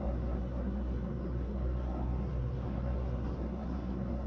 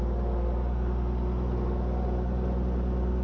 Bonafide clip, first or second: second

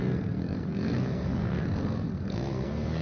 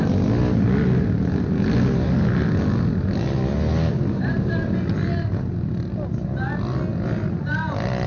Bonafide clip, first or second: second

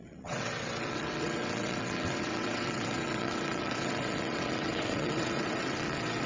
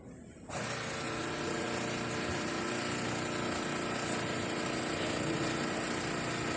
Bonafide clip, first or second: second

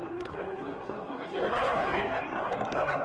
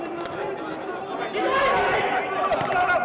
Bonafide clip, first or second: second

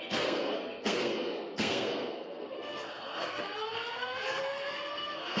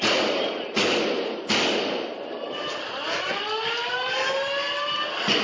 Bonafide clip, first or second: second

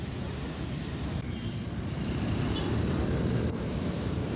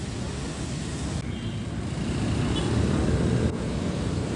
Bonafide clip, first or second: second